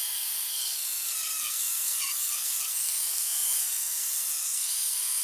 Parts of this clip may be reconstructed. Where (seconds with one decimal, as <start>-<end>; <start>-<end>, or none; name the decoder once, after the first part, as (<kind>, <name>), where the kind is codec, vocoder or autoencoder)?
0.0-5.2 (codec, SNAC)